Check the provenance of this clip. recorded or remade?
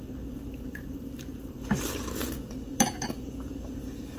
remade